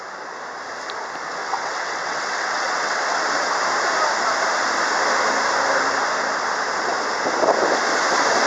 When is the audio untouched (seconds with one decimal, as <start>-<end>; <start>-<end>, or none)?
0.0-1.4; 3.5-8.5

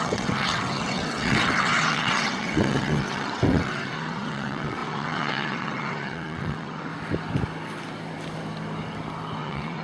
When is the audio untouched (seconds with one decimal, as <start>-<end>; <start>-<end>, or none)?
6.9-9.4

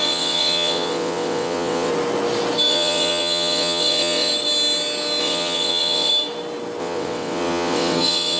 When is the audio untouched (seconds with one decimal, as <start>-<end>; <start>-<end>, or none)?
1.9-2.7; 4.3-5.2; 6.1-6.8